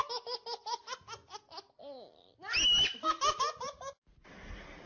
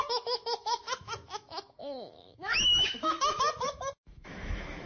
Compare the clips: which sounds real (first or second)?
first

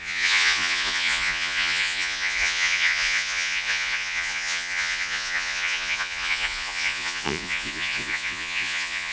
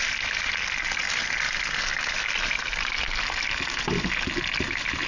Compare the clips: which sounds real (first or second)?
second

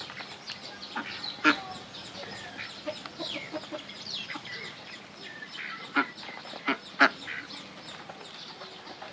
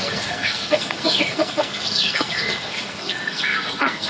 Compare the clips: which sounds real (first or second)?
first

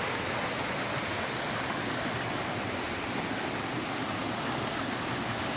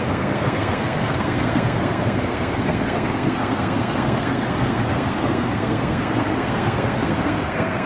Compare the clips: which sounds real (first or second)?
first